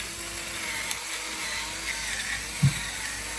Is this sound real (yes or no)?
yes